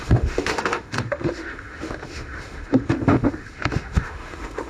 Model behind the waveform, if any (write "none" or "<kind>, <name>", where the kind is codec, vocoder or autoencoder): autoencoder, DAC-VAE